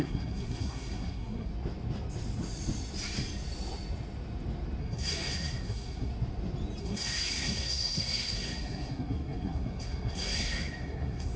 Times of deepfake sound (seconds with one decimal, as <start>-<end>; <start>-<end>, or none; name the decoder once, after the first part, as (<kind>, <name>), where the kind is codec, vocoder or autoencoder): 0.0-1.5 (codec, SNAC); 4.8-6.1; 6.8-11.4